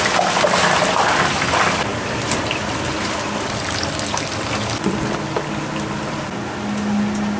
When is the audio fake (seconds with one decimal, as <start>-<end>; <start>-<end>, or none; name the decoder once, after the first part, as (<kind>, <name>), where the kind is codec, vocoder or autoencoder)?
none